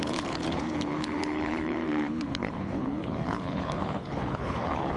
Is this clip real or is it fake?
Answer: fake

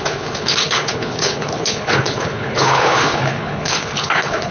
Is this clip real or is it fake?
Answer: fake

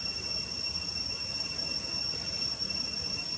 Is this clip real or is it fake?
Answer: real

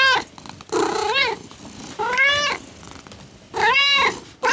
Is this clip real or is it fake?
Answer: real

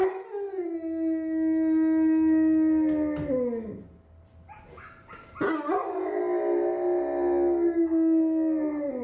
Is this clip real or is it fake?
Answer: real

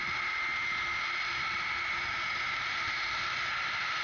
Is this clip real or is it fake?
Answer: real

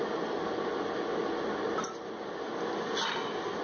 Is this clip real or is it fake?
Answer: real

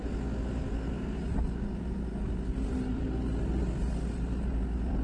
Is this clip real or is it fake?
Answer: real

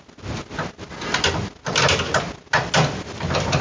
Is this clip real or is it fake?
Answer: real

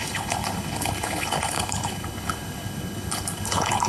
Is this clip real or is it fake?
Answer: fake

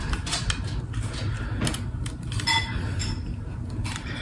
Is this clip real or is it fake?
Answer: real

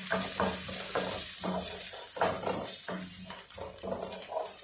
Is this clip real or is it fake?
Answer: real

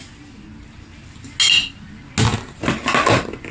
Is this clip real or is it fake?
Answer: real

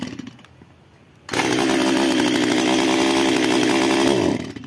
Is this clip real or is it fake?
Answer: real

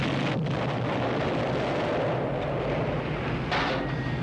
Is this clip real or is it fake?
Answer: real